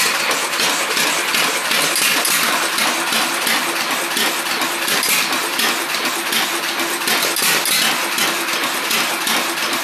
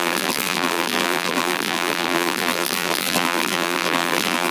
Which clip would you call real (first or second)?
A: first